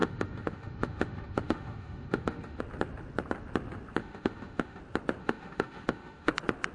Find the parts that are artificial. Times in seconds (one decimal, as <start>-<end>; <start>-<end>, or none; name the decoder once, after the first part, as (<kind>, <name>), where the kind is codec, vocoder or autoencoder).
0.0-2.6 (autoencoder, DAC-VAE); 4.0-4.8; 5.2-6.3